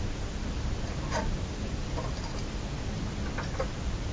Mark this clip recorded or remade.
recorded